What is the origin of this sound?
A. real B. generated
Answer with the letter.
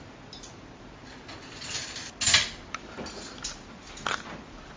A